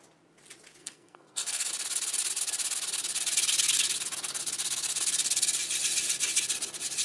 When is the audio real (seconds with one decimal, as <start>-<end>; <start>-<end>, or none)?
0.0-0.8; 1.7-7.0